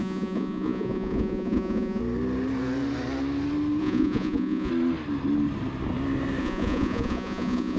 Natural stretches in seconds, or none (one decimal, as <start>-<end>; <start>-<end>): 2.0-3.8; 4.7-6.4